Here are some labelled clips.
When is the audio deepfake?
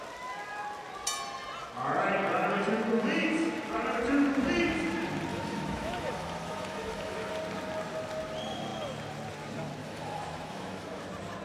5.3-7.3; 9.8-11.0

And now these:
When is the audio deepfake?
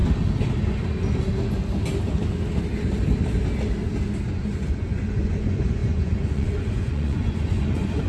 4.2-8.1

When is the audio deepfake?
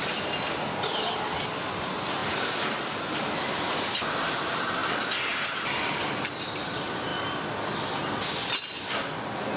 none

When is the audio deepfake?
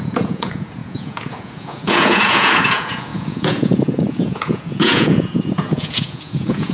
0.0-6.7